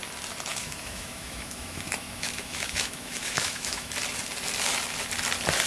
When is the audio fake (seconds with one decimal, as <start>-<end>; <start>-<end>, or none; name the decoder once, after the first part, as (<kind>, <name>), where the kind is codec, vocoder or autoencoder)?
0.5-3.9 (autoencoder, DAC-VAE)